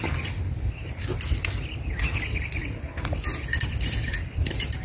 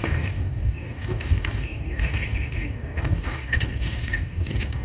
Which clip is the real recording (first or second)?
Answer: first